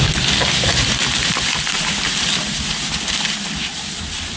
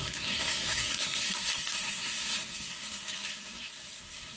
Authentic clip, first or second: first